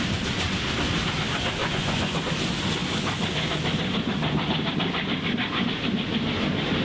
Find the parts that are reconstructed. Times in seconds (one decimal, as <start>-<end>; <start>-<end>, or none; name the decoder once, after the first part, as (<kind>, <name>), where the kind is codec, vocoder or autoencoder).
1.6-2.2 (vocoder, Vocos)